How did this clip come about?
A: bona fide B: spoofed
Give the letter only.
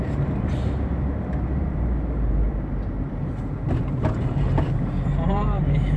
B